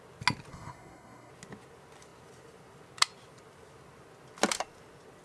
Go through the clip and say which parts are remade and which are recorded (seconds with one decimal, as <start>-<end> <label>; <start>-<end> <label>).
0.0-0.5 recorded; 0.5-1.3 remade; 1.3-5.2 recorded